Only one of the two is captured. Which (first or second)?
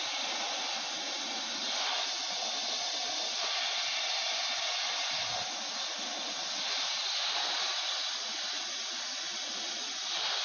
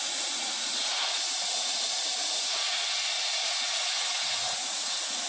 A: first